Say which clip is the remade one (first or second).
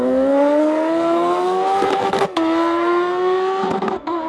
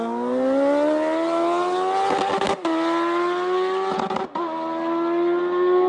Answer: first